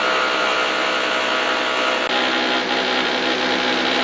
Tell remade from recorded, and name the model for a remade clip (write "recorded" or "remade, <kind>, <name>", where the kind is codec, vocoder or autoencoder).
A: recorded